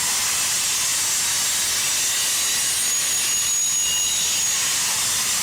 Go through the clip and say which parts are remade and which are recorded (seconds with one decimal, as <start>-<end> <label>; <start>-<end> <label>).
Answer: 0.0-5.4 recorded